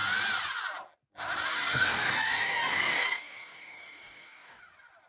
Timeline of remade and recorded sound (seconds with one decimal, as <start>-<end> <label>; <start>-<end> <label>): 0.0-1.5 recorded; 1.5-4.6 remade; 4.6-5.1 recorded